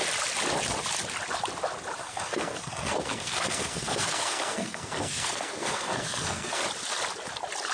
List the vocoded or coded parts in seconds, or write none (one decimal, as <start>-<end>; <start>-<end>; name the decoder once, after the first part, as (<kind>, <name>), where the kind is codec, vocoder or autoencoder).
2.0-6.6 (codec, SNAC)